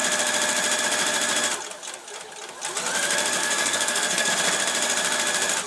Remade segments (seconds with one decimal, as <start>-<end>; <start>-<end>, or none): 3.4-4.3